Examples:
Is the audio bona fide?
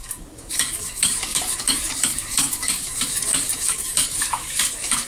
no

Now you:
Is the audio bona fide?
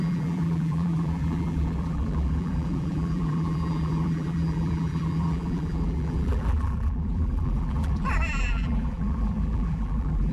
no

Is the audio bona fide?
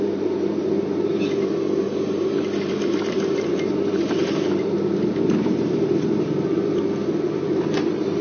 no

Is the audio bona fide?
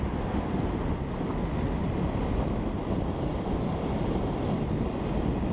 yes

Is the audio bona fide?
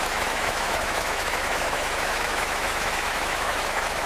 no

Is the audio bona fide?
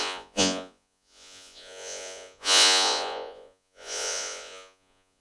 no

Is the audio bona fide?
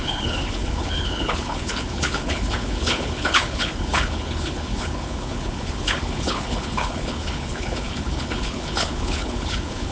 no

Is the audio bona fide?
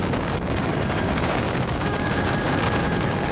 no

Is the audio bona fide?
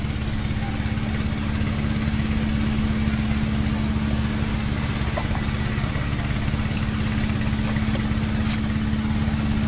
yes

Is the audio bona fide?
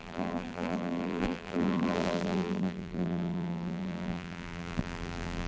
no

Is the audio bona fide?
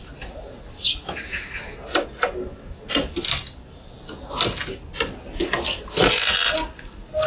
yes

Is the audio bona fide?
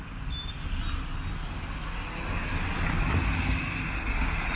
yes